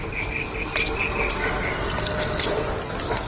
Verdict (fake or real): real